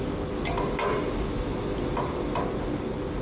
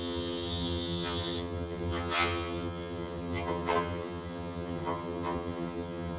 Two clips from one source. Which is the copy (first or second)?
second